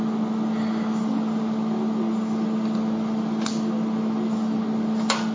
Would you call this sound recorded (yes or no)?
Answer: yes